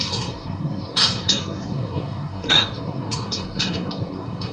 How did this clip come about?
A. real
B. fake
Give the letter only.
B